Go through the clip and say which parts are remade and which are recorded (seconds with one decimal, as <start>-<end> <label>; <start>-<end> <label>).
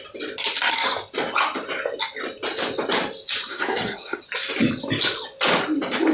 0.0-3.5 recorded; 3.5-4.2 remade; 4.2-6.1 recorded